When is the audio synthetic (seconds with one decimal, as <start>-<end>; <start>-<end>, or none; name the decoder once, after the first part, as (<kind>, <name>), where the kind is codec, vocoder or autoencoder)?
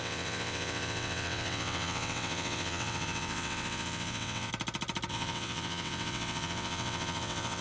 0.0-4.5 (vocoder, WaveNeXt); 5.1-7.6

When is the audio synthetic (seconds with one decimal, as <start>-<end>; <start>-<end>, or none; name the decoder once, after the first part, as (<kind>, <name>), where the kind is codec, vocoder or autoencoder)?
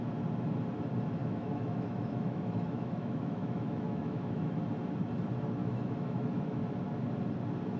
1.2-4.6 (autoencoder, DAC-VAE); 5.6-6.6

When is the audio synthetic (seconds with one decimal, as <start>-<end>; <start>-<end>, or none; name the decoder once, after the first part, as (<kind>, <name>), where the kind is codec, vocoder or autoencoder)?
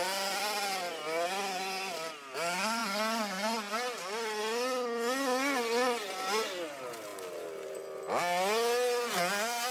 none